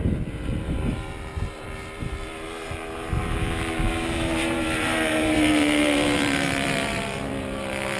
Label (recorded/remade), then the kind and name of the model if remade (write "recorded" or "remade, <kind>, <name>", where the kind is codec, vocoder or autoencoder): remade, vocoder, BigVGAN v2